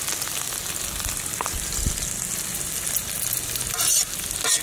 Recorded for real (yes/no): yes